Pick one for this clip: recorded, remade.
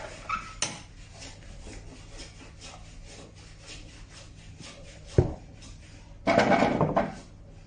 recorded